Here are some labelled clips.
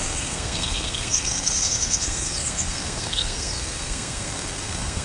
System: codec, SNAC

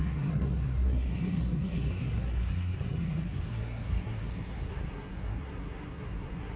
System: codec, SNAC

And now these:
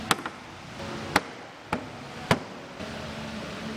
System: none